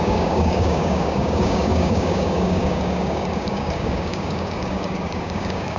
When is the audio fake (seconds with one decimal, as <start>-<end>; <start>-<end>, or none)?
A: 0.0-5.8